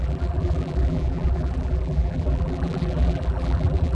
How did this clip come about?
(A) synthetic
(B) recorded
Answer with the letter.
A